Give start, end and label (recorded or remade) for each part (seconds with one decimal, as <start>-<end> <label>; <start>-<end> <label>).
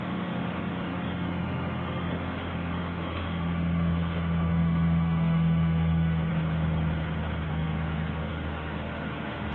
0.0-6.3 remade; 6.3-7.5 recorded; 7.5-9.5 remade